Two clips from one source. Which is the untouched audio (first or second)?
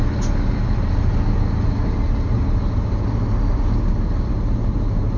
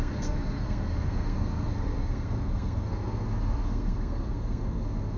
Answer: first